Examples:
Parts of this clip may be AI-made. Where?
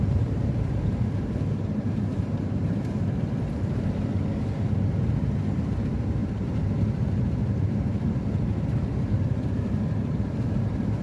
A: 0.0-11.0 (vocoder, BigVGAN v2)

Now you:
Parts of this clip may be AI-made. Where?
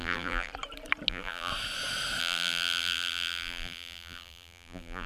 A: 0.0-0.5 (vocoder, BigVGAN v2); 1.1-1.5; 2.2-5.1